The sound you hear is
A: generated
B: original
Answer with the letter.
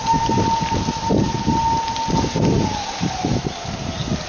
B